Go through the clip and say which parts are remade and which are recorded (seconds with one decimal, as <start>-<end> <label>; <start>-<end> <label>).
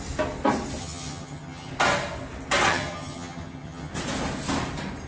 0.0-0.8 recorded; 0.8-1.7 remade; 1.7-2.7 recorded; 2.7-3.9 remade; 3.9-5.1 recorded